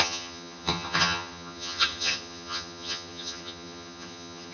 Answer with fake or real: fake